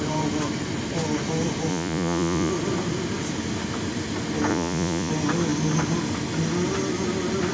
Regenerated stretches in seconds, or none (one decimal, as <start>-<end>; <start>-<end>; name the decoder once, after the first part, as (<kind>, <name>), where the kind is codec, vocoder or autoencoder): 1.7-2.5 (vocoder, Vocos); 4.5-5.1